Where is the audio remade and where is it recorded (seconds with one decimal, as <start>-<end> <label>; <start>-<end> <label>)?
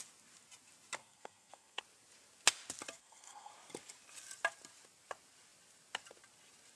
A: 0.0-1.0 recorded; 1.0-1.8 remade; 1.8-3.0 recorded; 3.0-3.5 remade; 3.5-6.8 recorded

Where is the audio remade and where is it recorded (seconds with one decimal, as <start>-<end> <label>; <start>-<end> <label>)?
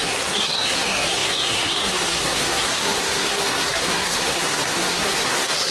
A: 0.0-5.7 remade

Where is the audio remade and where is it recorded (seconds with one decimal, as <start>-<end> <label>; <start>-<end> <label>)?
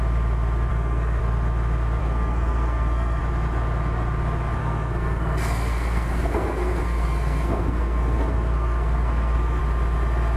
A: 0.0-0.7 recorded; 0.7-1.2 remade; 1.2-2.0 recorded; 2.0-3.2 remade; 3.2-4.6 recorded; 4.6-9.6 remade; 9.6-10.4 recorded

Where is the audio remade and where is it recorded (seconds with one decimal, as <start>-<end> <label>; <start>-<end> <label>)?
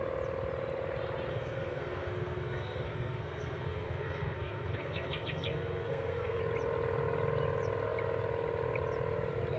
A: 0.0-1.3 recorded; 1.3-6.4 remade; 6.4-9.6 recorded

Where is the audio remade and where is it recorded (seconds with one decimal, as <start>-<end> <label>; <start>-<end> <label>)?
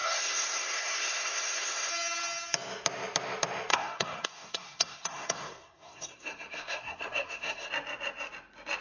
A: 0.0-1.9 remade; 1.9-3.7 recorded; 3.7-7.7 remade; 7.7-8.8 recorded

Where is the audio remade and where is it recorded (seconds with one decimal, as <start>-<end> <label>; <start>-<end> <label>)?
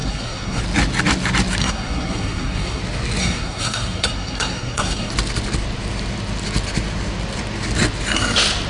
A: 0.0-0.6 remade; 0.6-1.6 recorded; 1.6-2.8 remade; 2.8-3.2 recorded; 3.2-5.1 remade; 5.1-8.7 recorded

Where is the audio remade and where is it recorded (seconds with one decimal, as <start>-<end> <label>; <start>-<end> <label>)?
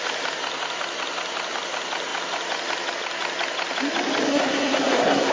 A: 0.0-4.3 recorded; 4.3-5.3 remade